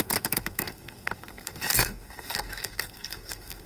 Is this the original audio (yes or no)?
no